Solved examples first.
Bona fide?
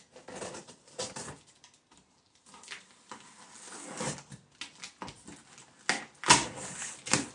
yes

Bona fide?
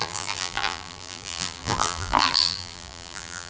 no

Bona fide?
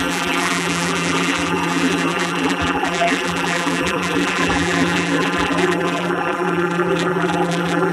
no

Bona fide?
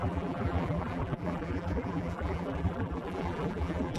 no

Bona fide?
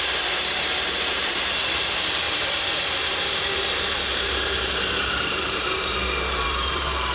no